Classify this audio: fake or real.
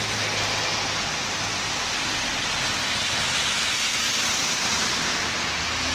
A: real